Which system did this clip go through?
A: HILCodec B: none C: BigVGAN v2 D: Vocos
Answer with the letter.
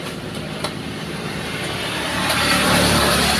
C